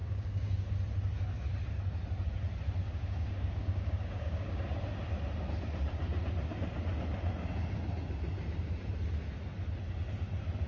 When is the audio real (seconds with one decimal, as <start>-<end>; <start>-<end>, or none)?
0.7-2.8; 4.7-10.7